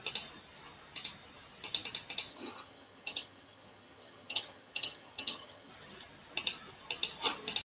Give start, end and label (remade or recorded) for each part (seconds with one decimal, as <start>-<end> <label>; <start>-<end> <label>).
0.0-2.3 recorded; 2.3-5.7 remade; 5.7-7.7 recorded